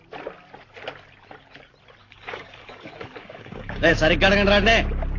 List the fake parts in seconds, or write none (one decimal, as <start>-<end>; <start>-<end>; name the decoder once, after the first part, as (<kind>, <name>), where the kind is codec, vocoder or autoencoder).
2.0-3.9 (codec, DAC)